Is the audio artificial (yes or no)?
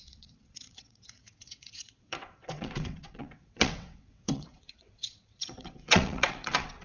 yes